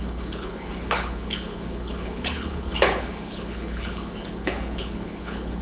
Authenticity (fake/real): fake